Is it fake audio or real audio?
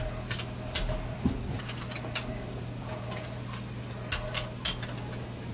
real